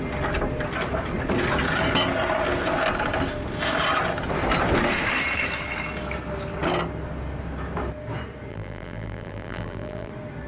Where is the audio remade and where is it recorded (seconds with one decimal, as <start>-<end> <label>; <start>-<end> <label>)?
0.0-8.5 recorded; 8.5-10.1 remade; 10.1-10.5 recorded